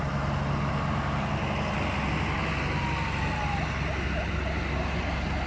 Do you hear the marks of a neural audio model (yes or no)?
no